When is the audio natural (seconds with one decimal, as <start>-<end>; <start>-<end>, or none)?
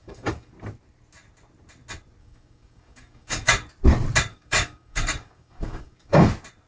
0.5-2.2; 3.5-4.3; 6.3-6.7